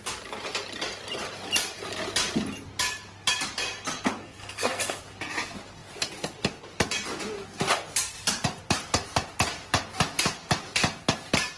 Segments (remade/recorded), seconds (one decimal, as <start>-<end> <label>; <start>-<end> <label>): 0.0-4.2 recorded; 4.2-5.0 remade; 5.0-11.6 recorded